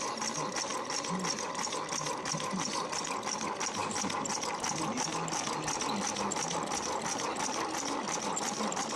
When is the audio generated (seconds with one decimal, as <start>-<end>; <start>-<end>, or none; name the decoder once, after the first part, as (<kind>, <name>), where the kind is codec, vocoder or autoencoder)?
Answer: none